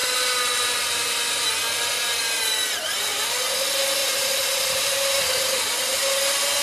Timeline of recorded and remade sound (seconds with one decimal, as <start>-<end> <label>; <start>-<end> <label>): 0.0-4.0 recorded; 4.0-5.7 remade; 5.7-6.6 recorded